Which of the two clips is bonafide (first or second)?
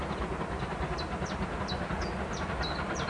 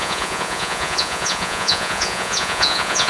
first